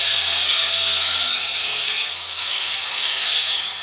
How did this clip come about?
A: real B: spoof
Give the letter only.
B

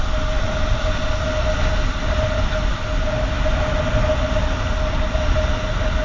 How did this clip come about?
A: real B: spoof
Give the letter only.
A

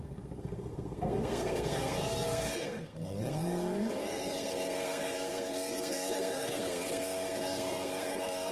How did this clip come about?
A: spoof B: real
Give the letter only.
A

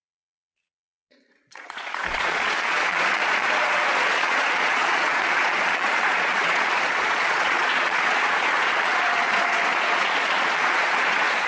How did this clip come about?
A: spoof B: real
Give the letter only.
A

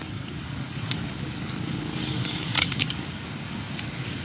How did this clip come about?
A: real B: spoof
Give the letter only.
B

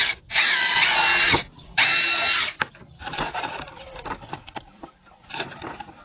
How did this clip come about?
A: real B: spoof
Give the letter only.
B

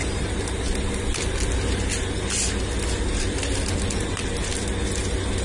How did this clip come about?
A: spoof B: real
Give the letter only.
B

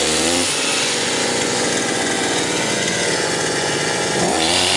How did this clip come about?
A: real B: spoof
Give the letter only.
B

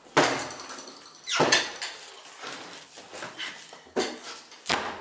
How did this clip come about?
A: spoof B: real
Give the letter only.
B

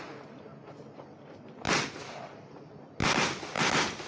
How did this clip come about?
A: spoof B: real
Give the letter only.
B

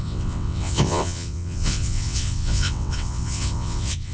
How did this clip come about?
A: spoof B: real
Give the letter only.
A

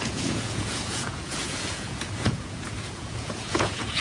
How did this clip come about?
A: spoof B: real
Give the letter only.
A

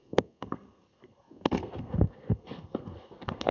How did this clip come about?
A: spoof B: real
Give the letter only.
A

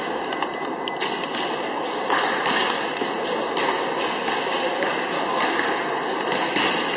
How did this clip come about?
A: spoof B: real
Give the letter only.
B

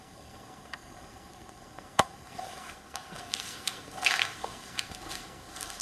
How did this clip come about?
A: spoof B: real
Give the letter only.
A